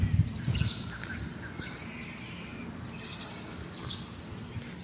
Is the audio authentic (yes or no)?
yes